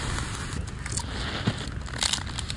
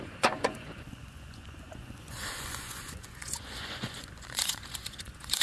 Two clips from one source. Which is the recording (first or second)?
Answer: first